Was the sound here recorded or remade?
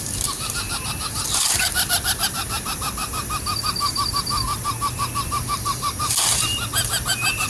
recorded